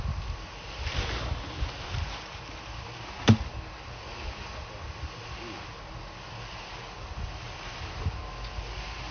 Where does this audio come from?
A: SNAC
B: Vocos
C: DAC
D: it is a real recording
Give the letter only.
D